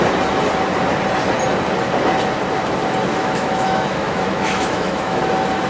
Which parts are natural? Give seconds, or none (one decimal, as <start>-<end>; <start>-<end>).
0.0-3.1; 5.2-5.7